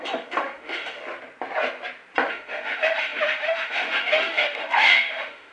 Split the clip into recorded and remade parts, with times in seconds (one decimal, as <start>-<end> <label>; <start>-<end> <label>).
0.0-1.0 remade; 1.0-2.3 recorded; 2.3-5.5 remade